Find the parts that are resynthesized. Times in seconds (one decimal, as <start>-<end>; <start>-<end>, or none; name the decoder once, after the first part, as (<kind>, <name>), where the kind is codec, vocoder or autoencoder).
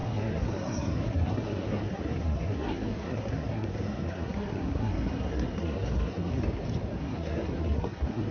0.0-6.3 (codec, SNAC); 7.0-8.3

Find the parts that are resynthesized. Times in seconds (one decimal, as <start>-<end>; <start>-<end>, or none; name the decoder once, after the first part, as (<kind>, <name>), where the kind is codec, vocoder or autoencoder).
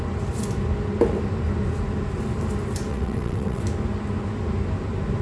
2.9-3.6 (vocoder, WaveNeXt)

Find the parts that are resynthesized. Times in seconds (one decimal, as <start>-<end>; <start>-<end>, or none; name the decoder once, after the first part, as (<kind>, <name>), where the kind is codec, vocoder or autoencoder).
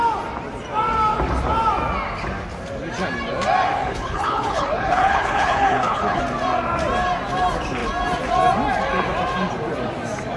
3.8-6.2 (codec, HILCodec)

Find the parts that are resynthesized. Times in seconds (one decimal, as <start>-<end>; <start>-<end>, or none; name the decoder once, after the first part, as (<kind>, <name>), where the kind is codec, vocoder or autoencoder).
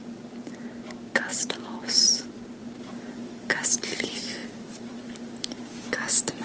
0.0-6.4 (vocoder, BigVGAN v2)